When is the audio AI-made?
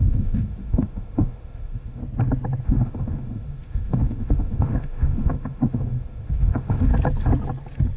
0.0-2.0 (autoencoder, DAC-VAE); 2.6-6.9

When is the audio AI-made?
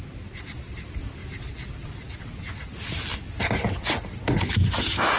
none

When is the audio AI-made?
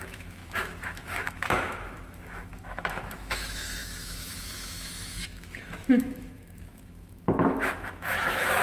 0.0-8.6 (autoencoder, DAC-VAE)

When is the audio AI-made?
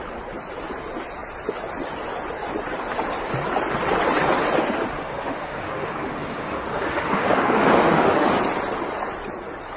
4.9-8.3 (autoencoder, DAC-VAE)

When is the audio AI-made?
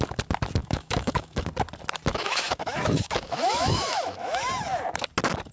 0.6-1.4 (autoencoder, DAC-VAE); 2.1-4.5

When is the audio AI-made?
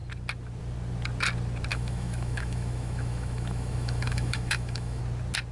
1.7-5.0 (autoencoder, DAC-VAE)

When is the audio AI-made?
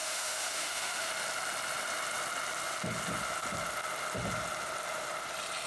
0.0-1.1 (autoencoder, DAC-VAE)